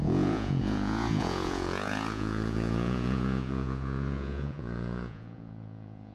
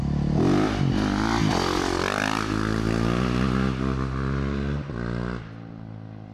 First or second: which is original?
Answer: second